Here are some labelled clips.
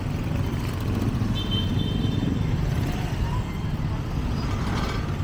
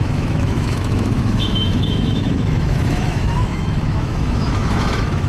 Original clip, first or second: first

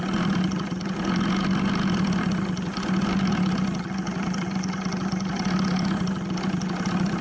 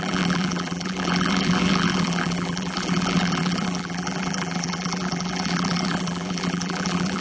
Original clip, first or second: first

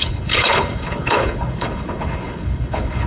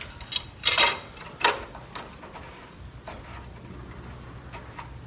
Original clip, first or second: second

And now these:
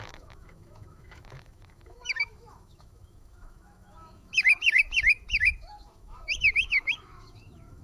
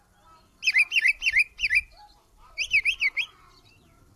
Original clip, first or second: second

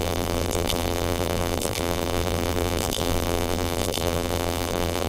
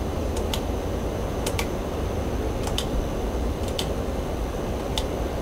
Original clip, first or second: second